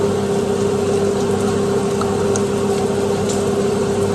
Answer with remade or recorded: recorded